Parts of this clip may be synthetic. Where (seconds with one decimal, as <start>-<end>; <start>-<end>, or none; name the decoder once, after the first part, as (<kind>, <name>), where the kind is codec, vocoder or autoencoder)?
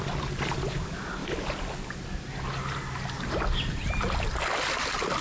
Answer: none